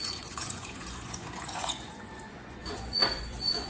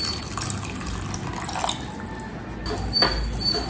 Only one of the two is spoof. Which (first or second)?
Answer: first